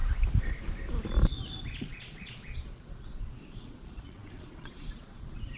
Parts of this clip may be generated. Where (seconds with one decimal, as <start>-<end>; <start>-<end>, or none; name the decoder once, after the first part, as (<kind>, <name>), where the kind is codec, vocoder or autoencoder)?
1.8-5.6 (vocoder, Vocos)

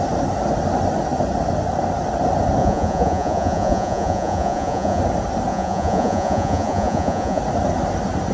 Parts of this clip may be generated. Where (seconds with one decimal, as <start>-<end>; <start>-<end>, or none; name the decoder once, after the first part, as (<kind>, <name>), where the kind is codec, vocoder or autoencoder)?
2.6-5.0 (vocoder, Vocos); 5.5-7.4

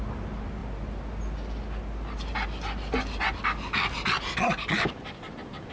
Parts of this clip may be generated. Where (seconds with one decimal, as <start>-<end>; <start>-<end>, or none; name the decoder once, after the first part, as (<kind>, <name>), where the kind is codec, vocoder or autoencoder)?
none

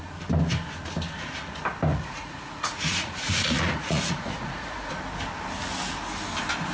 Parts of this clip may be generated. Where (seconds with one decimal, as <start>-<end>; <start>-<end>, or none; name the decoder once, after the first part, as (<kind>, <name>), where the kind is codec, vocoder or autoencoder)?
1.9-4.9 (vocoder, Vocos)

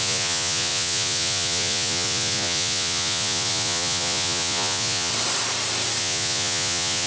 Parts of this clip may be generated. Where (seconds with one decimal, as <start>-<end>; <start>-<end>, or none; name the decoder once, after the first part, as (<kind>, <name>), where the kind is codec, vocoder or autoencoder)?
0.0-5.1 (vocoder, Vocos); 6.0-7.1

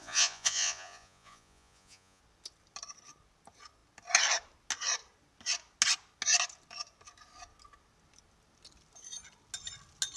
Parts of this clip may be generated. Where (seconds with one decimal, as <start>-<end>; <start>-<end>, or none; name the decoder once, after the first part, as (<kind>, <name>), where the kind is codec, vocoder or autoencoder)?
0.0-2.2 (vocoder, Vocos)